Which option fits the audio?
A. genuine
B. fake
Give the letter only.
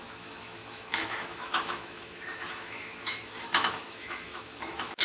B